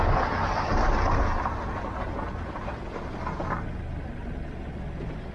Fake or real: real